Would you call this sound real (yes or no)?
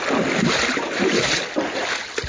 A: yes